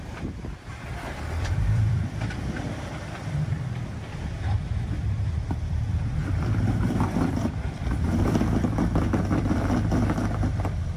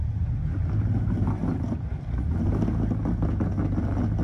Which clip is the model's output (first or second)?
first